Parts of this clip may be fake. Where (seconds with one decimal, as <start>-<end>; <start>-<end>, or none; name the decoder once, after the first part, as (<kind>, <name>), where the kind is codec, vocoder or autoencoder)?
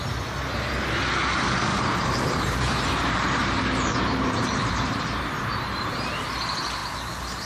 1.7-6.1 (vocoder, BigVGAN v2); 6.8-7.5